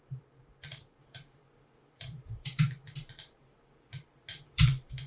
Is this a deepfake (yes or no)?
yes